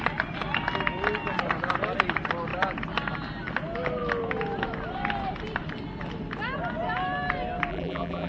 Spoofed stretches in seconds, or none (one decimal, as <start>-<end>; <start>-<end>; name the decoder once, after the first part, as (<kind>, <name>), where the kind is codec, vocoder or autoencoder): 7.7-8.3 (vocoder, BigVGAN v2)